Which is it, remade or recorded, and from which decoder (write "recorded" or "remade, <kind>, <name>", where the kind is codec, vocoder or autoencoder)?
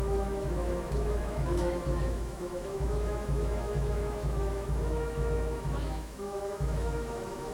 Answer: remade, autoencoder, DAC-VAE